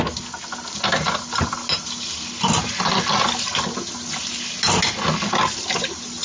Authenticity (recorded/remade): recorded